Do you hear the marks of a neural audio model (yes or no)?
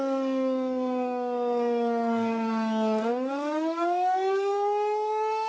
yes